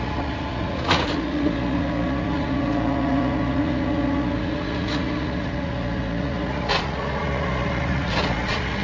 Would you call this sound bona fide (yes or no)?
no